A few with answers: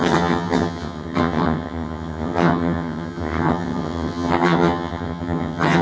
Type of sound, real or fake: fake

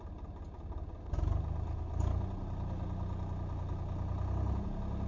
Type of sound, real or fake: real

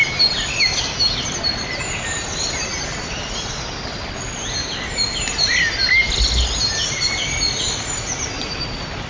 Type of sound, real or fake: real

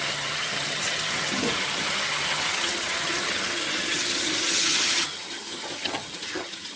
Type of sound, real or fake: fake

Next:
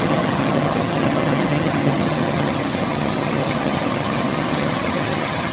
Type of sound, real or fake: fake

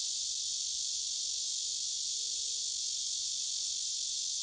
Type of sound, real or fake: real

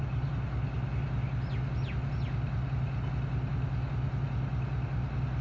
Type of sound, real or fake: real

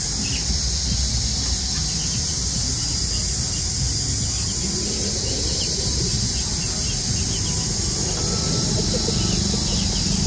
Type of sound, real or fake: real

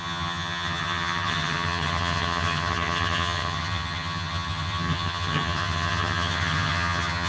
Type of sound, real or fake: fake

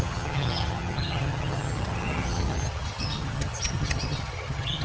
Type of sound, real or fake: fake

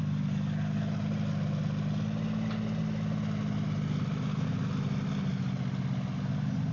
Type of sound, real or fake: real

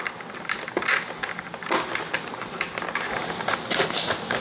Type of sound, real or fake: real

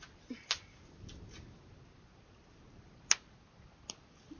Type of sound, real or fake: real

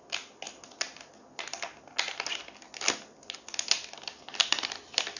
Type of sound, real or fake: real